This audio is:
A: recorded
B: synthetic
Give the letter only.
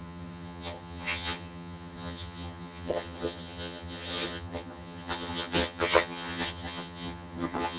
B